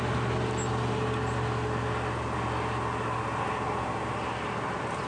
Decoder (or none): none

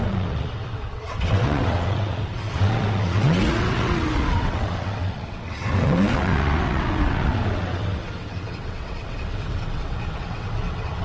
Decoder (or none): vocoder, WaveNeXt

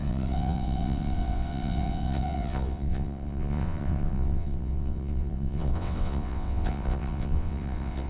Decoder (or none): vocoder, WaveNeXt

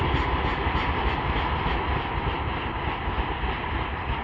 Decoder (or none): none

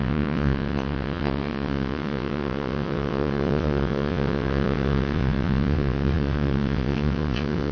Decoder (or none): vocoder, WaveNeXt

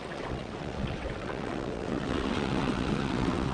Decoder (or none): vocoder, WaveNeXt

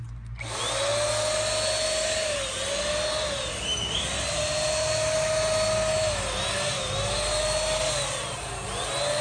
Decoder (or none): none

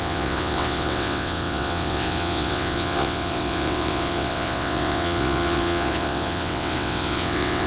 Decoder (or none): vocoder, WaveNeXt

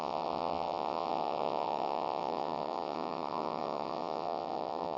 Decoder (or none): vocoder, WaveNeXt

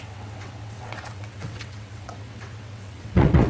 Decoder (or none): vocoder, WaveNeXt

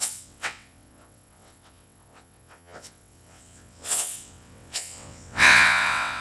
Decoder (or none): vocoder, WaveNeXt